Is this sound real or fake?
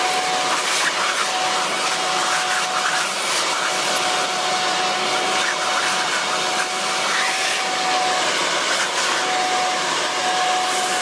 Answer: real